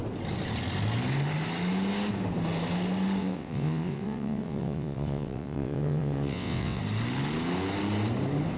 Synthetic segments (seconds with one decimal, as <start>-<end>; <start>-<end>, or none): 3.2-6.8